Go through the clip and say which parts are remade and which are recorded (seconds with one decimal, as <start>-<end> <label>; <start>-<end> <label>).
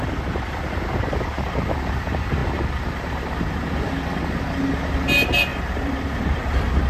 0.0-5.5 recorded; 5.5-6.9 remade